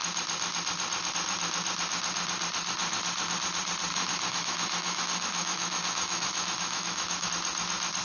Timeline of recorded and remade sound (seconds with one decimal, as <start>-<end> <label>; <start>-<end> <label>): 0.0-3.9 recorded; 3.9-7.3 remade; 7.3-8.0 recorded